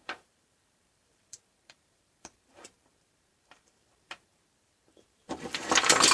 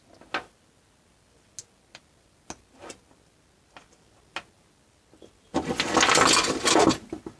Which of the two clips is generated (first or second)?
first